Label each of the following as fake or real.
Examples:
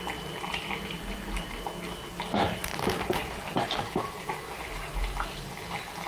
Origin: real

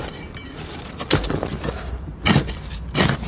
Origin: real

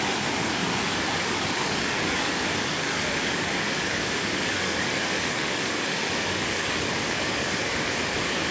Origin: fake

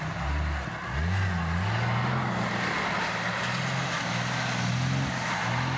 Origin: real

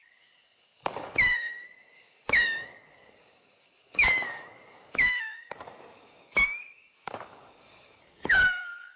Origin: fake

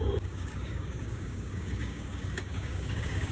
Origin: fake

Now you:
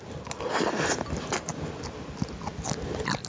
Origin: real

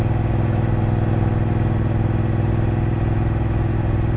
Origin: real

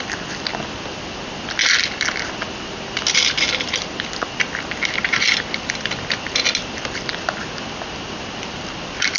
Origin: real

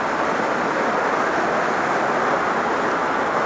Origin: real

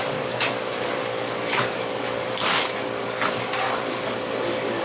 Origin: fake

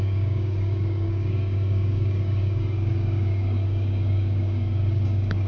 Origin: fake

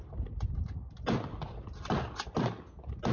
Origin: real